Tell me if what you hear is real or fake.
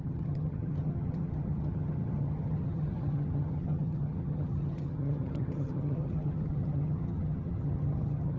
fake